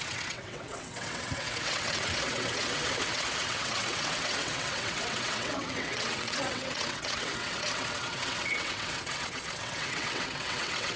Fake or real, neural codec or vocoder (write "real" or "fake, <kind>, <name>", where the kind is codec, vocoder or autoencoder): fake, vocoder, WaveNeXt